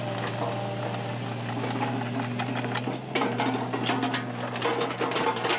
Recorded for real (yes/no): yes